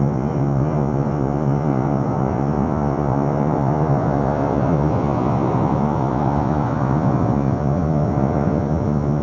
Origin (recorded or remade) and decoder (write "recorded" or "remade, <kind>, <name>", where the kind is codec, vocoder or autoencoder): remade, vocoder, Vocos